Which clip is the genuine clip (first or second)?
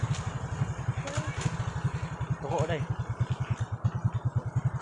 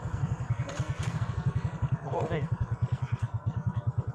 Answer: first